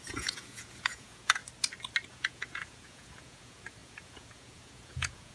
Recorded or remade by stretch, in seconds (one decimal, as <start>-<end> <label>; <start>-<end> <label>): 0.0-1.4 remade; 1.4-2.1 recorded; 2.1-5.3 remade